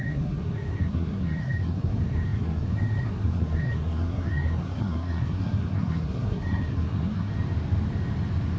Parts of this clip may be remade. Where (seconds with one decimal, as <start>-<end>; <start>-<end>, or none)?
0.0-7.3